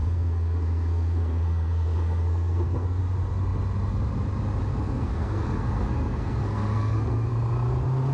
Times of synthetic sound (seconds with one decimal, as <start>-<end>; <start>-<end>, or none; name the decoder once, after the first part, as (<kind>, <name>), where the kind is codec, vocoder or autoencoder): 0.0-3.0 (codec, SNAC); 4.7-7.3